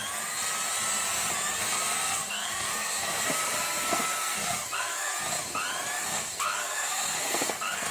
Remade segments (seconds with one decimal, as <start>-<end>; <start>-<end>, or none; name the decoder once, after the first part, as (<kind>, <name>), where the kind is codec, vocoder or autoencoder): 1.5-5.1 (codec, SNAC); 6.0-7.9